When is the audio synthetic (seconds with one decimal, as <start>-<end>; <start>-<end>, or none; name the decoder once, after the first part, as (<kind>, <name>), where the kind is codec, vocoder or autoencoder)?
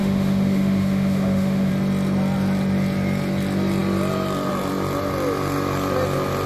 0.0-1.7 (autoencoder, DAC-VAE)